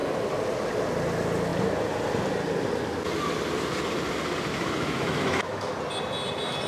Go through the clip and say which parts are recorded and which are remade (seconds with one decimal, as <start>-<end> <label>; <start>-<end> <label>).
0.0-4.5 recorded; 4.5-5.7 remade; 5.7-6.7 recorded